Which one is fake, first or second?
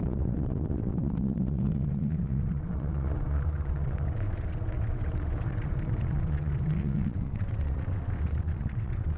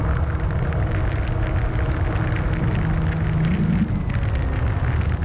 first